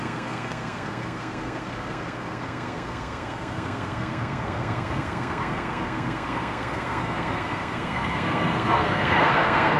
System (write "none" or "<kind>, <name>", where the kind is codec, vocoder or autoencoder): codec, SNAC